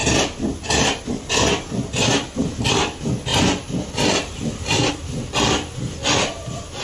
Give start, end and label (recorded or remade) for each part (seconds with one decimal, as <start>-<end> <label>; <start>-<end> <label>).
0.0-3.3 recorded; 3.3-4.9 remade; 4.9-6.8 recorded